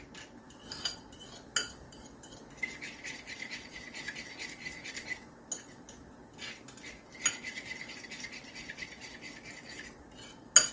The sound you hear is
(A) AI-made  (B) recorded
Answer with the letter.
B